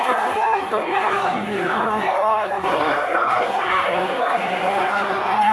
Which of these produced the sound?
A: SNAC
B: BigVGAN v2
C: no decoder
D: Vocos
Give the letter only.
A